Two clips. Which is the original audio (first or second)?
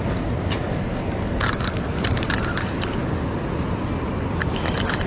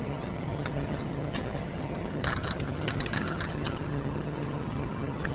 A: first